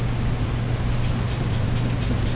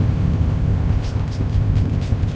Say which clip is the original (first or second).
first